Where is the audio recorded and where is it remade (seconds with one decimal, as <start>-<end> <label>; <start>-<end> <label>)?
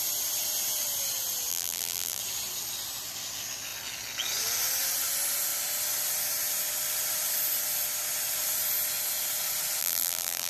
0.0-1.5 recorded; 1.5-2.2 remade; 2.2-9.8 recorded; 9.8-10.5 remade